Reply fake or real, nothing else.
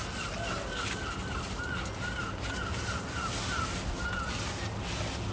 real